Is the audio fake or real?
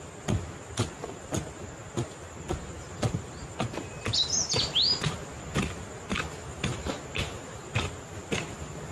real